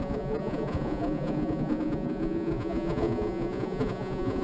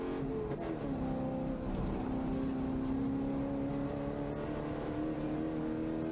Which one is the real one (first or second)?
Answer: second